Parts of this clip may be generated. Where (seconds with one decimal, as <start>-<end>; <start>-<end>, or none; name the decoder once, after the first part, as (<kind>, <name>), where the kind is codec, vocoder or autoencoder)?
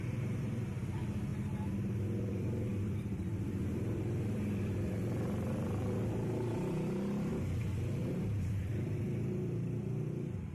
0.0-1.3 (vocoder, BigVGAN v2); 2.3-7.3; 8.5-10.5